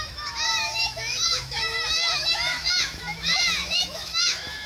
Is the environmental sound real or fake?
fake